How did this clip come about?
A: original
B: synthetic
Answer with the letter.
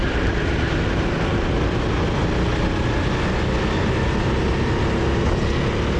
A